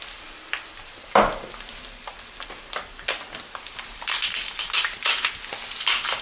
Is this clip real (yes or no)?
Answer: yes